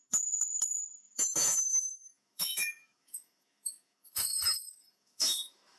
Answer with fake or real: fake